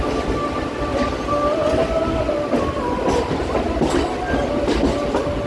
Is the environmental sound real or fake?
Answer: real